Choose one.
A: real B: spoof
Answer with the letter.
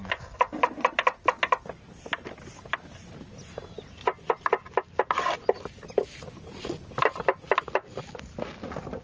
A